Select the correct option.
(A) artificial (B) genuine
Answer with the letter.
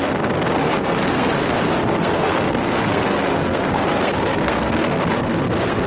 A